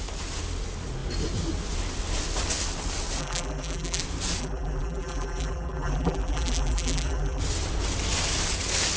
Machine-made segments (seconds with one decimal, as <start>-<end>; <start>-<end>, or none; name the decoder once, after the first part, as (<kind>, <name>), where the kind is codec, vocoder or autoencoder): 3.2-4.0 (vocoder, BigVGAN v2); 4.4-7.4